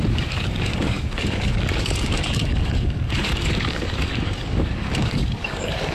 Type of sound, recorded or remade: remade